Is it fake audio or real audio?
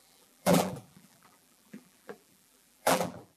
fake